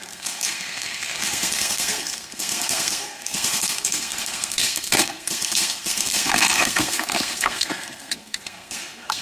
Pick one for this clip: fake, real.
fake